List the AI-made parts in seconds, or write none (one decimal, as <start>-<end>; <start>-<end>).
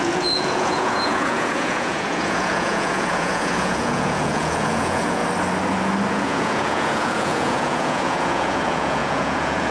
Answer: 0.0-5.2; 6.1-9.7